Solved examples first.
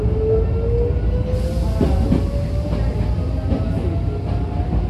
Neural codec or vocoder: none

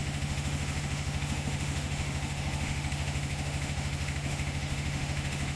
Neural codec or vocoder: autoencoder, DAC-VAE